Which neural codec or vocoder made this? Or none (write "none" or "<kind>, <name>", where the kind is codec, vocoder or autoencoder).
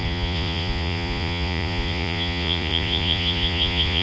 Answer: vocoder, Vocos